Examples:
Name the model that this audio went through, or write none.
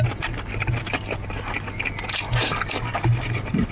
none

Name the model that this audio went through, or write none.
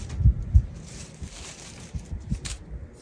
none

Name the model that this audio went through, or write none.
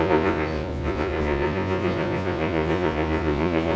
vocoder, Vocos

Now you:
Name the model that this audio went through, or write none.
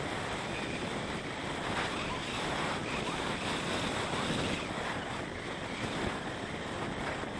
none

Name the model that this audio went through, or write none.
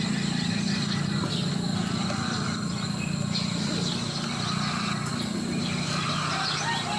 none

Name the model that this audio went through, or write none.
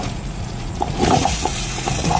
vocoder, Vocos